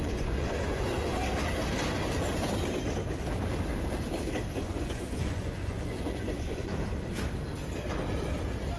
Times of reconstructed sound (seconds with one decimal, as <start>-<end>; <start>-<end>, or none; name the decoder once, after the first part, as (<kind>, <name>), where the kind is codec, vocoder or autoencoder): 0.0-1.2 (vocoder, Vocos); 4.6-6.7